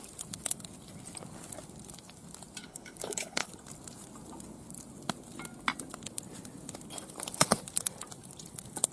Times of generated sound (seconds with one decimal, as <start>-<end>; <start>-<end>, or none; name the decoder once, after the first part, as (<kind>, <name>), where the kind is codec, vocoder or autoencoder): 2.6-3.5 (codec, HILCodec)